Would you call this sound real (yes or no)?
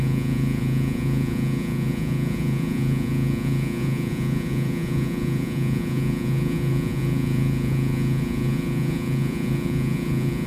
no